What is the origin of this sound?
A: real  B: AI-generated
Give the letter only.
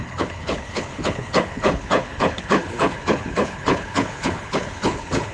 B